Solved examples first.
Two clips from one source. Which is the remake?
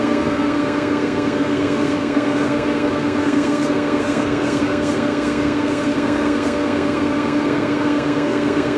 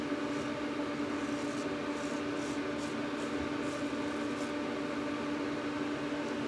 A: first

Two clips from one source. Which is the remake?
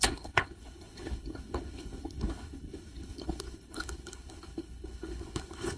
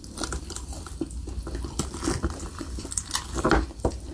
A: first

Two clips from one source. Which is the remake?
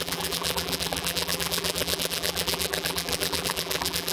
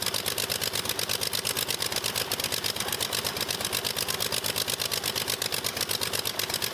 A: first